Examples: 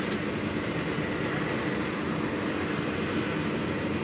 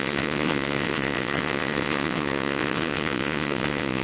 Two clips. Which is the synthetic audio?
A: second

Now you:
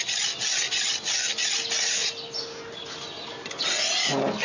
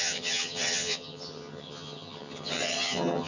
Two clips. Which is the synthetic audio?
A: second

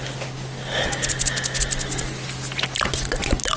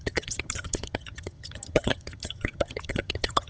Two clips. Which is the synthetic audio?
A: second